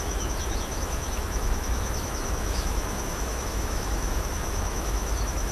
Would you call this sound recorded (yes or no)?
no